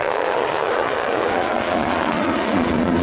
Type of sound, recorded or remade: remade